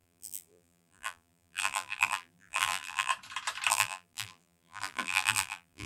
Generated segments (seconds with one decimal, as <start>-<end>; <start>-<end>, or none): 0.0-3.1; 3.7-5.9